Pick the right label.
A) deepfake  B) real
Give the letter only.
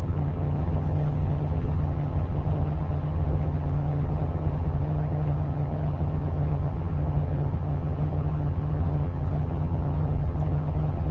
A